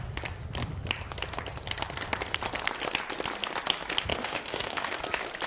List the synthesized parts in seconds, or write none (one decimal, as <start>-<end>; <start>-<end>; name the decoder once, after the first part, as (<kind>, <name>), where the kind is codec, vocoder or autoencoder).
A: 4.1-5.0 (autoencoder, DAC-VAE)